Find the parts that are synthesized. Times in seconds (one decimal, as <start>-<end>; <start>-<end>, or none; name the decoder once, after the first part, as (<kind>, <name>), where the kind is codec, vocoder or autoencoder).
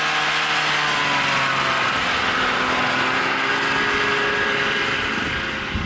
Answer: none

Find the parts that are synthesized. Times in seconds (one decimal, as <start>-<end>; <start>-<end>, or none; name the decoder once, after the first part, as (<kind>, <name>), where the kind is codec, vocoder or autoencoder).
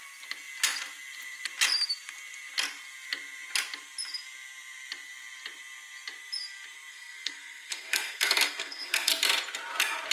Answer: 6.9-9.1 (codec, SNAC)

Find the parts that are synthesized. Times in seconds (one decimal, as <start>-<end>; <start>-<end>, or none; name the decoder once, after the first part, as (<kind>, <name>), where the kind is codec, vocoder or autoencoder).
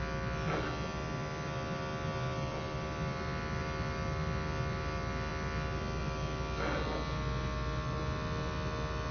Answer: none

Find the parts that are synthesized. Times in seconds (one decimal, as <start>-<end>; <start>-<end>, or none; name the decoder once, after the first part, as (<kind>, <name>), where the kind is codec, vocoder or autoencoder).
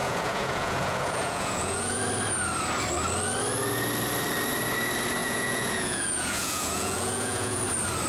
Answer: 0.0-2.0 (vocoder, Vocos); 5.2-7.6